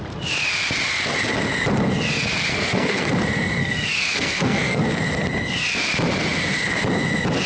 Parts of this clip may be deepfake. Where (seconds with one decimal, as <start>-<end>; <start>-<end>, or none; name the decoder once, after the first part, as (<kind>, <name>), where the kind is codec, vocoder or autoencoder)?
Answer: 2.5-3.1 (codec, SNAC); 3.6-4.8